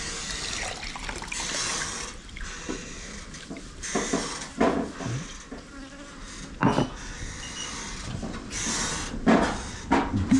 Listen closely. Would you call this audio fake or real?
real